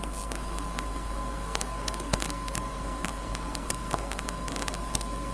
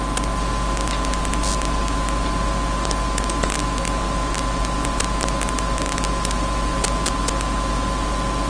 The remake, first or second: first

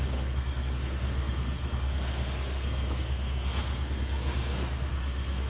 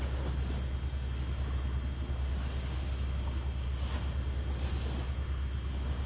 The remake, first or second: first